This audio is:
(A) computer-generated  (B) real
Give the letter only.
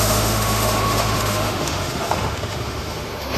A